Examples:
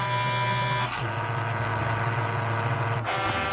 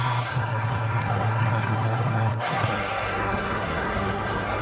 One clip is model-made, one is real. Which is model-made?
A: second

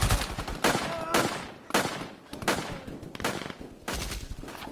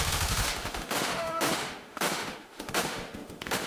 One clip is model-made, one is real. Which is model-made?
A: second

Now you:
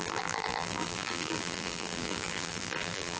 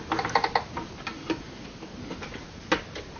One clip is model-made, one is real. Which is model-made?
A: first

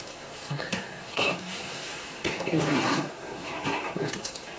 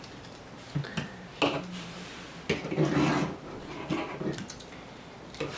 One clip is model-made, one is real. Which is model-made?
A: first